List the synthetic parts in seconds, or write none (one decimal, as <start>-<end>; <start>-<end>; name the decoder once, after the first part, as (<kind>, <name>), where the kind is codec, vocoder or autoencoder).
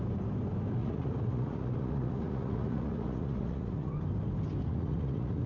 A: 0.8-3.9 (vocoder, Vocos); 4.6-5.5